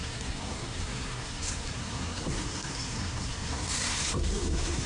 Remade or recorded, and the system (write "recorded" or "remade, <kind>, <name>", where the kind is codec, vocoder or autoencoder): remade, codec, SNAC